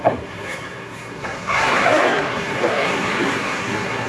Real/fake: fake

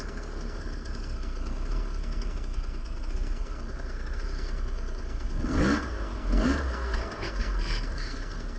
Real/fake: fake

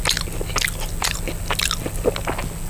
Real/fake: real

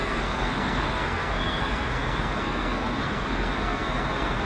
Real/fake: fake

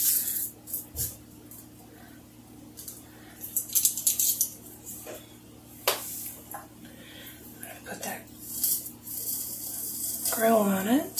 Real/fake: real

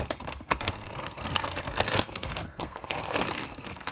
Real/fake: fake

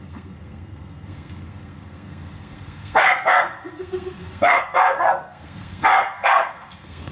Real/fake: fake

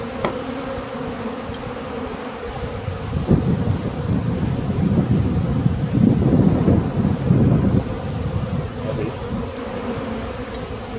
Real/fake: real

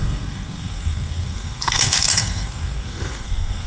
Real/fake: fake